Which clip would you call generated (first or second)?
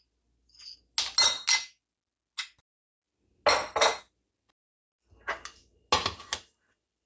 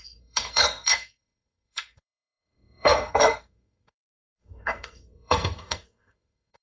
second